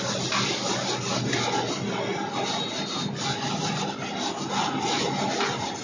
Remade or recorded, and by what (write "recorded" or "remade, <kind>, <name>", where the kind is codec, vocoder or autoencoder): recorded